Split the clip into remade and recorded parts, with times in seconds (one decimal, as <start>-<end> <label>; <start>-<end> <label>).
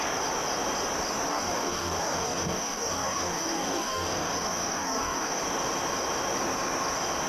0.0-1.3 recorded; 1.3-5.4 remade; 5.4-7.3 recorded